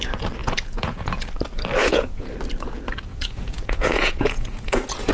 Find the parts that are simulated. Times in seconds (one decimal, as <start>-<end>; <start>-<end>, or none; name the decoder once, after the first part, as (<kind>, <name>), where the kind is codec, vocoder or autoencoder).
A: 0.4-1.3 (vocoder, Vocos); 1.8-2.3; 3.1-5.1